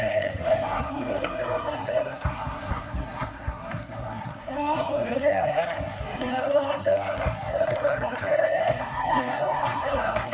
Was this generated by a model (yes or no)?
yes